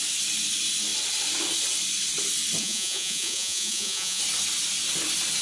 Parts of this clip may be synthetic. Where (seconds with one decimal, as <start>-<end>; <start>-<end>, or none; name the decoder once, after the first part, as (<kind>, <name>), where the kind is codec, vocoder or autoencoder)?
2.6-4.2 (vocoder, Vocos)